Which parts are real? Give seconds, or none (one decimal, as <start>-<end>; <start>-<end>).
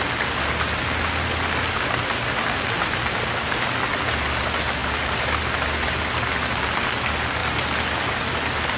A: 0.0-4.8; 5.4-7.4; 8.3-8.8